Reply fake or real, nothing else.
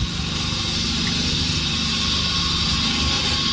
real